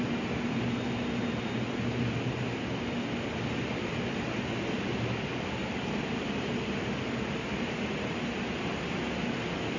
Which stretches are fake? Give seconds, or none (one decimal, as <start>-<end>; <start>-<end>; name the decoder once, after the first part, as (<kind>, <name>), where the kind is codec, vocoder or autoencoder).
none